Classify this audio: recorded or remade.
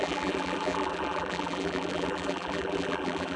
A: remade